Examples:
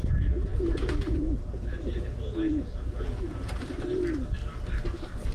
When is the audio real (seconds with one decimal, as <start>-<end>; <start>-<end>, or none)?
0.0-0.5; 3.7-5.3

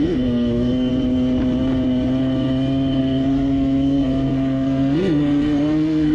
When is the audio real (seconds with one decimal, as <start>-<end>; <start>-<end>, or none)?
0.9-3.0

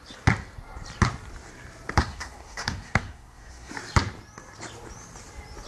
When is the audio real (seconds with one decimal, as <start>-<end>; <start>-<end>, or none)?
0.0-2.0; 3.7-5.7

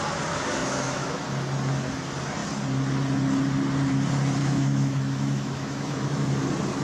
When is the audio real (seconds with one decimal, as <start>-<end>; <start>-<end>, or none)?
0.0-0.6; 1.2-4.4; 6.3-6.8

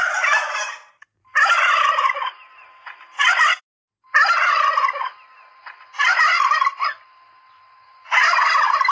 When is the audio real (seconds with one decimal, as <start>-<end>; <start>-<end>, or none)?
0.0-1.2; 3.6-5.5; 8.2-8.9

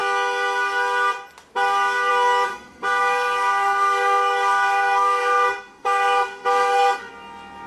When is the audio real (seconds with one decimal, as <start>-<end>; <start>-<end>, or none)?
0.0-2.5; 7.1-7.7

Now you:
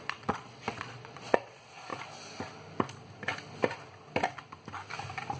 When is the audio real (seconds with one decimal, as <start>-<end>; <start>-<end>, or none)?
1.9-5.4